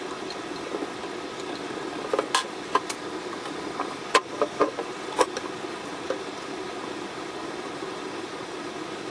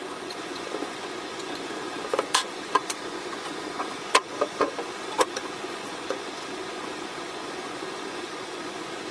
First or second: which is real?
first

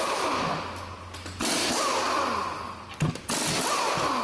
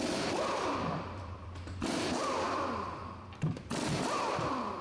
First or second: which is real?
first